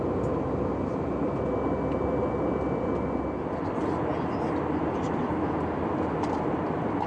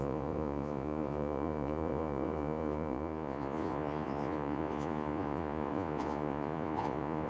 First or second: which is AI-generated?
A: second